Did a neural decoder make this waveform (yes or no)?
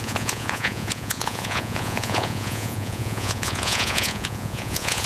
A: yes